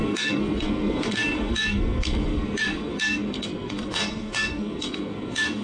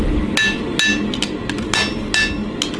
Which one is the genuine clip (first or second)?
second